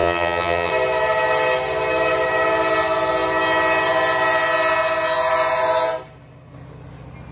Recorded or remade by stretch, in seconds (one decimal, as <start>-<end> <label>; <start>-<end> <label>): 0.0-0.7 remade; 0.7-7.3 recorded